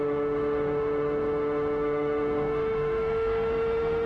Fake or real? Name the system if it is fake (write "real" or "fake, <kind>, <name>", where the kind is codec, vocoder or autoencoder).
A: fake, autoencoder, DAC-VAE